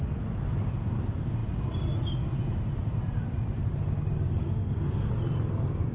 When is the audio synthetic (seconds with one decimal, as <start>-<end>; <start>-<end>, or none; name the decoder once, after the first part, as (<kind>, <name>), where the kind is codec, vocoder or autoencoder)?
4.4-5.1 (autoencoder, DAC-VAE)